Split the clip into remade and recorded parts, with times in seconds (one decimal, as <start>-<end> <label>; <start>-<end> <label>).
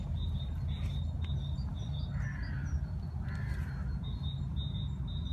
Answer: 0.0-5.3 recorded